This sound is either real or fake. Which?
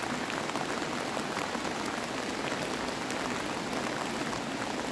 real